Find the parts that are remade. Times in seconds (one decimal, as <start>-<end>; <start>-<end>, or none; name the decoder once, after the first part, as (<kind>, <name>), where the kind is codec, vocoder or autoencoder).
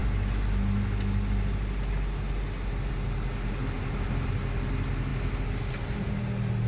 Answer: 3.6-4.3 (vocoder, BigVGAN v2)